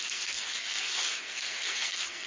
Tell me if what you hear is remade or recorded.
remade